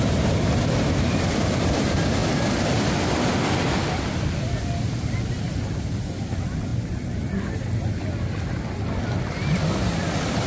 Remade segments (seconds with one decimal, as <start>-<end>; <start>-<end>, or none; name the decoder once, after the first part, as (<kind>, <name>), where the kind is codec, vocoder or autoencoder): 0.0-6.7 (vocoder, BigVGAN v2); 7.8-10.5